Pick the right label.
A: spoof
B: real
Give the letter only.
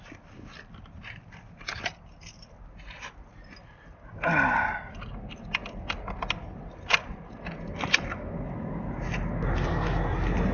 B